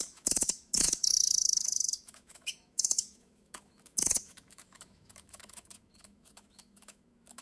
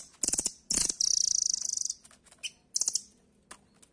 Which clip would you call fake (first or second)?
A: first